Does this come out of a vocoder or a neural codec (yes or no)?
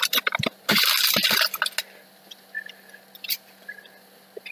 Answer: no